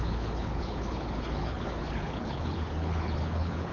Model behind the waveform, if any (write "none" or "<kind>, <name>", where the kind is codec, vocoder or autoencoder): codec, HILCodec